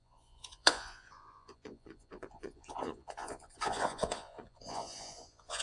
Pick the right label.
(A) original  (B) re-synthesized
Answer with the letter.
B